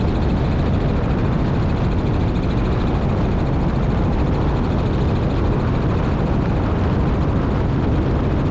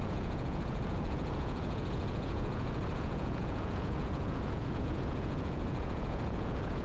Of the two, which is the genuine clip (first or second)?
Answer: first